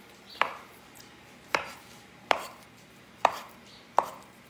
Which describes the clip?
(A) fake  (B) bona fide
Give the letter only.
A